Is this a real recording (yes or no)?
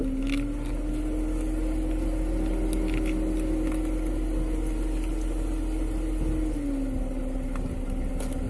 yes